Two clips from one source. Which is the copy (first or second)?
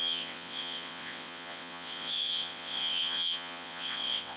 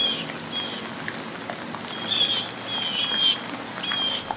first